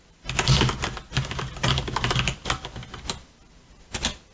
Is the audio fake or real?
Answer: real